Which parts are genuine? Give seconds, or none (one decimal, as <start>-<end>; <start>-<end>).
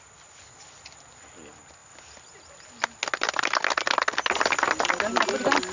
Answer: 0.0-5.7